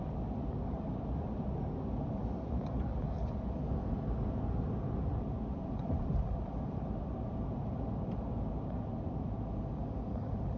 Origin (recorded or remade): recorded